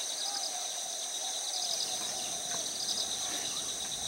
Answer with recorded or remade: recorded